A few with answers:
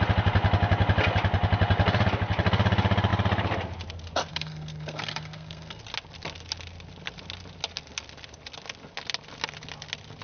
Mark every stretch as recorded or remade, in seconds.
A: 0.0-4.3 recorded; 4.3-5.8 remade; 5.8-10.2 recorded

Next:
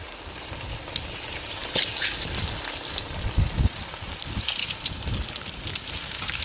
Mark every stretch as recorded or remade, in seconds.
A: 0.0-1.9 remade; 1.9-3.9 recorded; 3.9-4.6 remade; 4.6-5.9 recorded; 5.9-6.4 remade

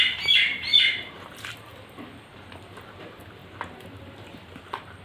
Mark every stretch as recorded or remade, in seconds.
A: 0.0-5.0 remade

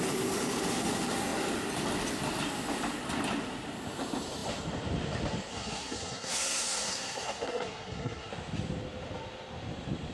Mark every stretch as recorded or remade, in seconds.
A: 0.0-5.5 recorded; 5.5-8.3 remade; 8.3-10.1 recorded

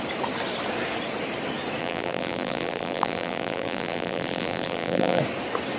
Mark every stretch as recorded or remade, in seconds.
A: 0.0-1.8 recorded; 1.8-5.2 remade; 5.2-5.8 recorded

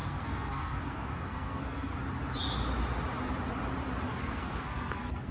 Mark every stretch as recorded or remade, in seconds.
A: 0.0-1.9 remade; 1.9-4.2 recorded; 4.2-5.3 remade